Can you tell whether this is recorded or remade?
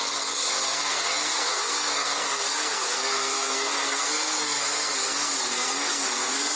remade